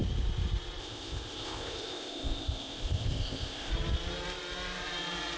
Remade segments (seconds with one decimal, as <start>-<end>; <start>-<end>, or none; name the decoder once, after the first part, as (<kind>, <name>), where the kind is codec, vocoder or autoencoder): 0.8-3.7 (codec, ZipCodec)